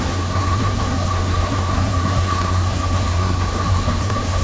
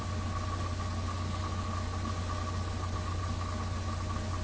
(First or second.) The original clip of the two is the second